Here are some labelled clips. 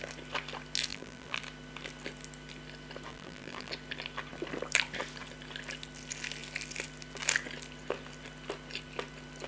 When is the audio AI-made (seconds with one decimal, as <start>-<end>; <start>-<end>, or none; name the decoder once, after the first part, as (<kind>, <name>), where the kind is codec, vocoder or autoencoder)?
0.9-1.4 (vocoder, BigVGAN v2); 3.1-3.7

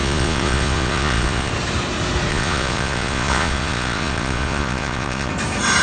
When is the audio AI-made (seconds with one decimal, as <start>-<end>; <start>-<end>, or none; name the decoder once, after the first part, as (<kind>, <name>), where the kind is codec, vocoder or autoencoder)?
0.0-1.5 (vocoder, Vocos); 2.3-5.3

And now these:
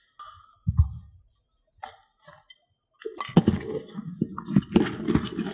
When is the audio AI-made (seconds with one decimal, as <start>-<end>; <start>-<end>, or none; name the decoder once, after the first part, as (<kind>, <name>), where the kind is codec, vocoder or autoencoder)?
none

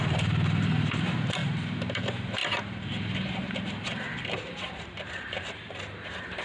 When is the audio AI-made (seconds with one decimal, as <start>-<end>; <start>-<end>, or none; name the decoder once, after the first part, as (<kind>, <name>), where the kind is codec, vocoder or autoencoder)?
0.0-6.4 (vocoder, BigVGAN v2)

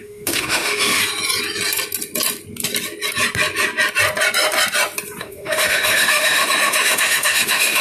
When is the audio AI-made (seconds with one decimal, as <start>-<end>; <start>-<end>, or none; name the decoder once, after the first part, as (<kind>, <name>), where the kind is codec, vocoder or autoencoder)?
0.0-1.0 (autoencoder, DAC-VAE); 5.2-7.8